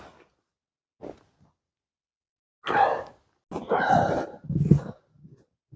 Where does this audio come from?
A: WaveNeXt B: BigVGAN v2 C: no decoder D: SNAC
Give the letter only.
C